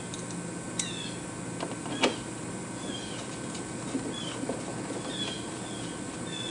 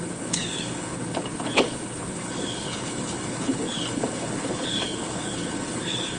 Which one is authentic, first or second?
first